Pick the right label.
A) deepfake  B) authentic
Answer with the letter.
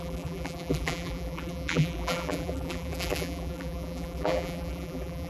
A